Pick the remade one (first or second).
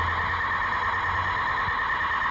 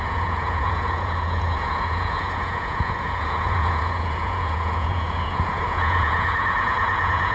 second